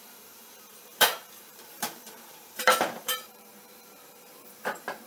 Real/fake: fake